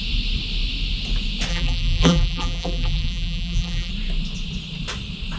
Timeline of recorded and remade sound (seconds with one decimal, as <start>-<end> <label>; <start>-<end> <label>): 0.0-1.5 recorded; 1.5-3.9 remade; 3.9-5.4 recorded

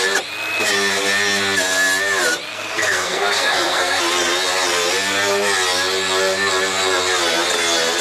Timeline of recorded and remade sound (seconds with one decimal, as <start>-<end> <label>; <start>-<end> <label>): 0.0-2.5 recorded; 2.5-4.0 remade; 4.0-8.0 recorded

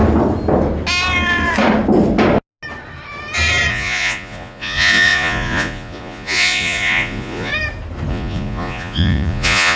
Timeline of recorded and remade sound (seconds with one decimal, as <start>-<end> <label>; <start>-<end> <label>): 0.0-3.7 recorded; 3.7-7.5 remade; 7.5-8.1 recorded; 8.1-9.8 remade

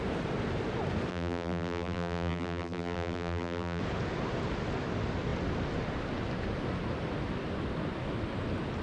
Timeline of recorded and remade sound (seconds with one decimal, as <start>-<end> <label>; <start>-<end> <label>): 0.0-1.1 recorded; 1.1-3.8 remade; 3.8-8.8 recorded

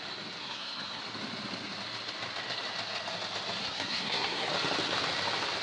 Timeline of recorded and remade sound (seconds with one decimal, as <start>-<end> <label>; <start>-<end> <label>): 0.0-0.4 recorded; 0.4-1.0 remade; 1.0-3.6 recorded; 3.6-4.5 remade; 4.5-5.6 recorded